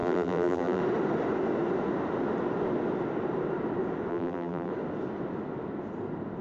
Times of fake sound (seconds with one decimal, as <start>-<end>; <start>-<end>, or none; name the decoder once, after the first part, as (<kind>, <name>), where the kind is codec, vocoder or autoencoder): 0.0-0.8 (vocoder, BigVGAN v2); 4.1-4.7